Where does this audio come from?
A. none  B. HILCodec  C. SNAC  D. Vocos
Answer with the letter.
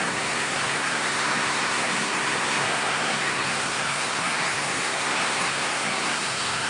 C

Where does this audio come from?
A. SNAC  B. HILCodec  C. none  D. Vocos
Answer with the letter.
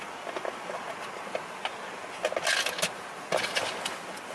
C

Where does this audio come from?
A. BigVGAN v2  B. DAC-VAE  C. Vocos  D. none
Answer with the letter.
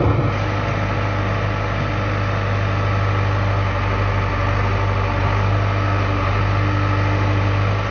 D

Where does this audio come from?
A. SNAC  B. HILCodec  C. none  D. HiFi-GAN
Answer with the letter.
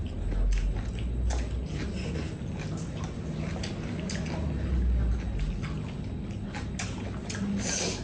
C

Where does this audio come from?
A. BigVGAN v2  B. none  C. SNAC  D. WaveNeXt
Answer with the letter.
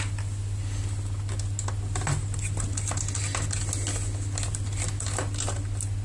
B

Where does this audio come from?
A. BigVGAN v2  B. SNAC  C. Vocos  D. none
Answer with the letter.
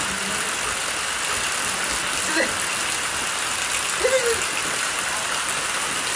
D